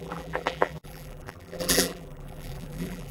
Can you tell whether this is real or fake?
fake